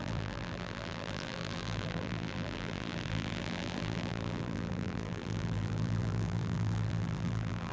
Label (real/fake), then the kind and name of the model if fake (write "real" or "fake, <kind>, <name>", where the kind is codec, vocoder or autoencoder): fake, vocoder, BigVGAN v2